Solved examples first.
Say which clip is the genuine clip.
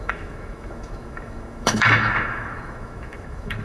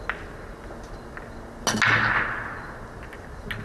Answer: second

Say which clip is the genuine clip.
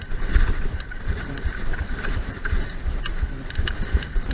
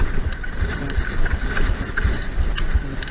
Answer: second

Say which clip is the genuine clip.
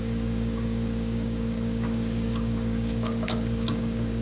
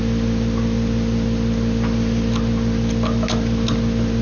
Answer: second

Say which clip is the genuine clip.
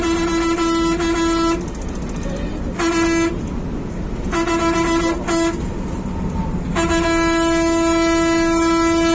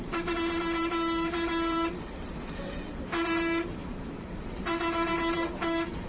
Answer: first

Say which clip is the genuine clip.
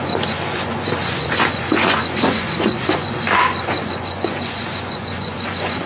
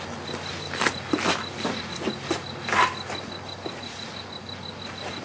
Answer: second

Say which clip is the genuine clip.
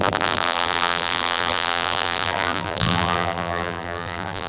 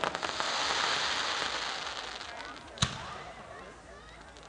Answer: second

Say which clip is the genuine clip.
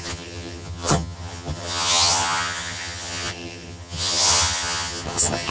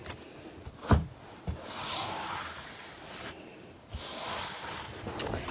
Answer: second